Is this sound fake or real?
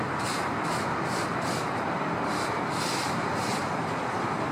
fake